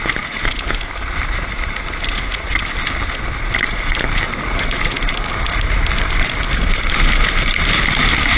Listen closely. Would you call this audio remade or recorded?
recorded